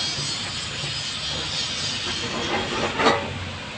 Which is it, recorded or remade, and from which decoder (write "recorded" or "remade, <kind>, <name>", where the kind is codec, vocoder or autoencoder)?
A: recorded